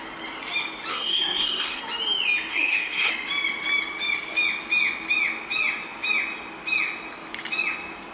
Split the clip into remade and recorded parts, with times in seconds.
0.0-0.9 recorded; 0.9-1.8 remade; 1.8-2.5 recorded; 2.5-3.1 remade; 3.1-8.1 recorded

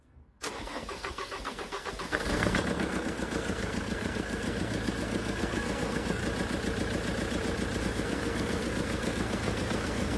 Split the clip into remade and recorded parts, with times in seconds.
0.0-6.2 remade; 6.2-7.8 recorded; 7.8-10.2 remade

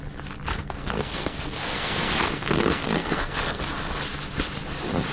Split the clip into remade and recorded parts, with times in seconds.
0.0-0.5 recorded; 0.5-3.6 remade; 3.6-5.1 recorded